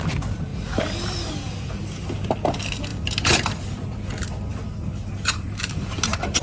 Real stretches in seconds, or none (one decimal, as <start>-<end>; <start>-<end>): 0.0-2.9; 4.1-4.5